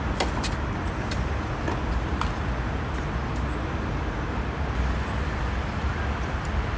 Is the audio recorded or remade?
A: recorded